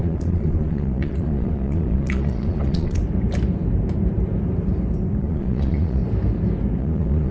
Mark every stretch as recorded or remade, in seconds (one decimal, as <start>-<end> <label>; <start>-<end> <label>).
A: 0.0-3.0 remade; 3.0-5.2 recorded; 5.2-6.0 remade; 6.0-6.8 recorded; 6.8-7.3 remade